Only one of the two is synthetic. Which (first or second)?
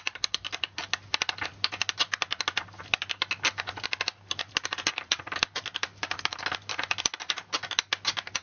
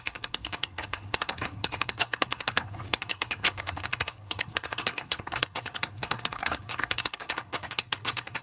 second